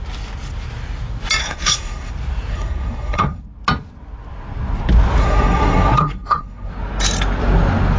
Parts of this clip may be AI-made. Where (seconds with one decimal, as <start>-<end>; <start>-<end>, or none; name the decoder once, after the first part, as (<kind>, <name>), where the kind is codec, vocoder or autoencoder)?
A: 1.4-2.1 (codec, SNAC); 2.5-3.4; 5.2-6.7